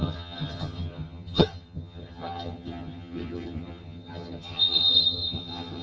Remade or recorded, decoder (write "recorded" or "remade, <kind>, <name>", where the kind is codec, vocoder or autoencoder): remade, vocoder, HiFi-GAN